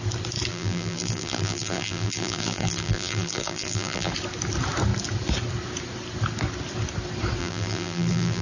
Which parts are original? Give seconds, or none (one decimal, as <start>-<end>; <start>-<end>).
0.0-0.5; 4.1-7.4